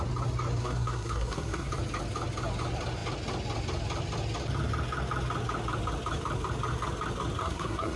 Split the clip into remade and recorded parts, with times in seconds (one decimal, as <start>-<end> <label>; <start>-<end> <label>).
0.0-0.6 recorded; 0.6-1.7 remade; 1.7-7.4 recorded; 7.4-8.0 remade